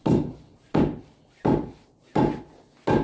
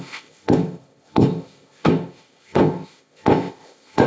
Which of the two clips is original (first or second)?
first